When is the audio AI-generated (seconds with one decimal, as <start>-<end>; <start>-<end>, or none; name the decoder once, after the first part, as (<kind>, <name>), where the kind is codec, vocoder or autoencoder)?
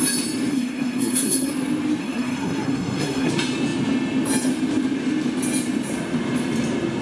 0.5-1.5 (codec, SNAC); 2.0-3.3